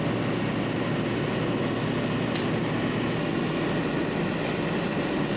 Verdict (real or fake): real